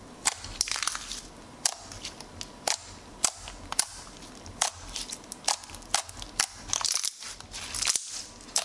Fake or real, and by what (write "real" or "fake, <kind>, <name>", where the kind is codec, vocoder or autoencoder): real